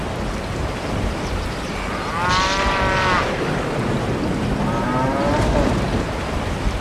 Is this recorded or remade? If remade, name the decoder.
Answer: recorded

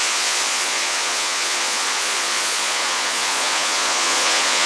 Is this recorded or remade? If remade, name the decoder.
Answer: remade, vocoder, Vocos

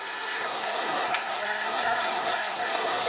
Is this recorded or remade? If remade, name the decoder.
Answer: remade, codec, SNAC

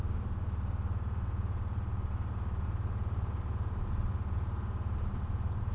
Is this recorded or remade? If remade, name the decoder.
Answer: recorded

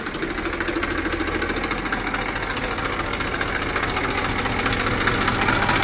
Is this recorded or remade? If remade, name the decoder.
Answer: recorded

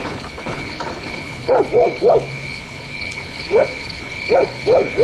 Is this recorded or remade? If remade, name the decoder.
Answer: remade, codec, HILCodec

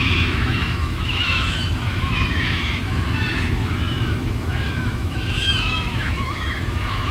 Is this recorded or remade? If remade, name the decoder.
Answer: remade, autoencoder, DAC-VAE